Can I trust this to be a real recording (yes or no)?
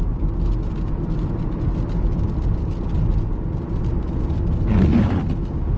yes